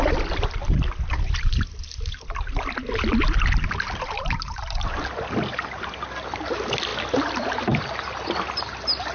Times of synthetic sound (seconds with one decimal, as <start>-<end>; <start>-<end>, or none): none